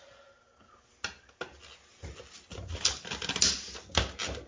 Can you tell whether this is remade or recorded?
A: recorded